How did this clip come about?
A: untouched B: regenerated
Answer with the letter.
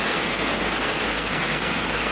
B